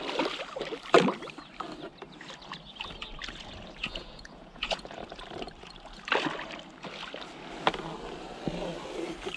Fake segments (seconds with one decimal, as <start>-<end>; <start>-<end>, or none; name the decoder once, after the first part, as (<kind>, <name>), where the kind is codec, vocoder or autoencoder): 3.8-5.0 (vocoder, Vocos)